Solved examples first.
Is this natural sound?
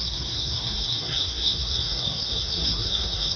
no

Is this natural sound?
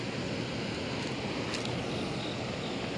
yes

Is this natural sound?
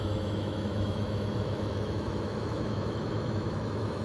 no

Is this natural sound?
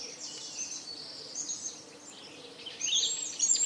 yes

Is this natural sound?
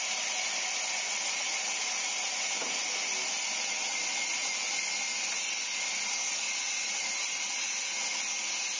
yes